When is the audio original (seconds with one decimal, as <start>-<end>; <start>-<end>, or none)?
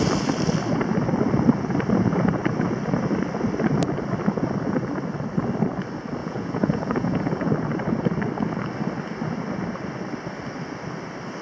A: 0.0-6.2; 7.5-11.4